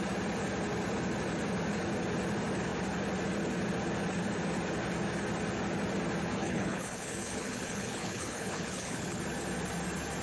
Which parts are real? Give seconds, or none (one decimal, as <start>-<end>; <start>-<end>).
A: 0.0-6.4; 9.2-10.2